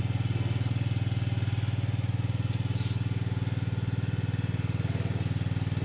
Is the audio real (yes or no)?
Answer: yes